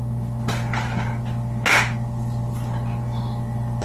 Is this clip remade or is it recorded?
recorded